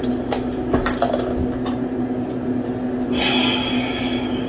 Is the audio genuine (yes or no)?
yes